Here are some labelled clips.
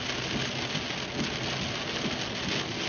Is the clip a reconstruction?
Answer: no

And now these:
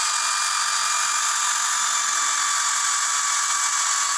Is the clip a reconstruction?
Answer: no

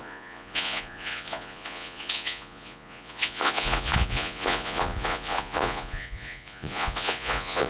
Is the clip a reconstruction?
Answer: yes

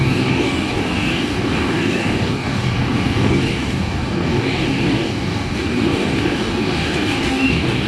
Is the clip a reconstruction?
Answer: yes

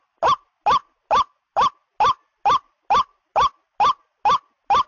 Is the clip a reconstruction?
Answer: no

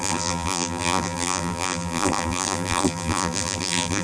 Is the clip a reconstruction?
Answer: yes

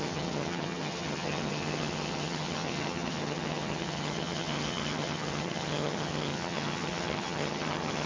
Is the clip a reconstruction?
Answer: yes